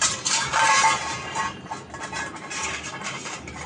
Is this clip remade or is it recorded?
remade